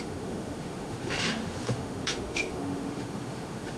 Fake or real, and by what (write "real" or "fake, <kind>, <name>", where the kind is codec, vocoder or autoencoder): fake, autoencoder, DAC-VAE